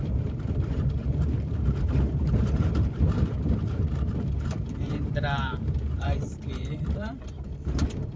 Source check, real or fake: fake